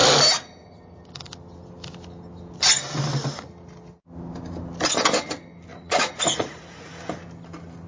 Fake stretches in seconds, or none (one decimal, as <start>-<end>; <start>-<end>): 5.7-6.9